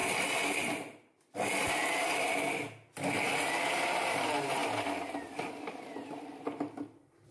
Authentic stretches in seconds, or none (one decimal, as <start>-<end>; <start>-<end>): 0.0-7.3